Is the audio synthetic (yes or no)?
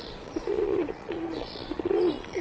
yes